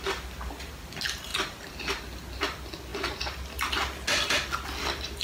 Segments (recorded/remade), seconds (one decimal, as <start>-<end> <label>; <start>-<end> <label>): 0.0-5.2 recorded